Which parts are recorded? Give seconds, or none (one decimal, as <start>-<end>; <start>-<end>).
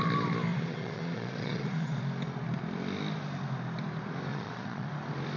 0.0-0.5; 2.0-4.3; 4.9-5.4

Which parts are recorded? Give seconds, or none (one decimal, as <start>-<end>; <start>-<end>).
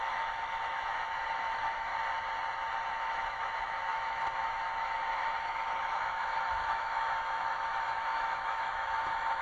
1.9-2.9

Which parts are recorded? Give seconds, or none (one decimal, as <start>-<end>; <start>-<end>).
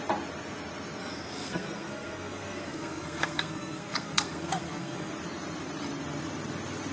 0.0-1.0; 5.1-6.9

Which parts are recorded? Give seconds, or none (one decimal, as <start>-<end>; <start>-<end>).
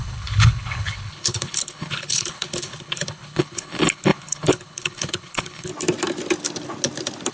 5.7-7.3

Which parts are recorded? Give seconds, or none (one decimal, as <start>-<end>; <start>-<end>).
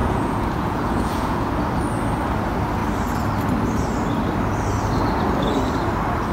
1.5-6.3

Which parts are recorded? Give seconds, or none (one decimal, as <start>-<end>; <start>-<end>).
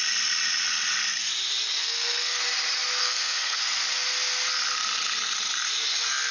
0.0-1.8; 2.4-3.0; 3.6-6.3